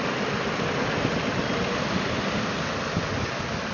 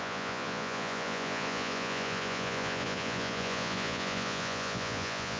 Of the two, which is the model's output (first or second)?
second